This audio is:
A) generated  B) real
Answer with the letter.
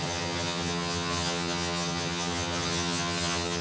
A